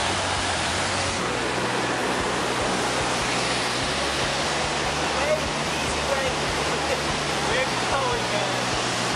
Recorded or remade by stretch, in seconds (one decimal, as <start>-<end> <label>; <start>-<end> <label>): 0.0-5.8 recorded; 5.8-9.2 remade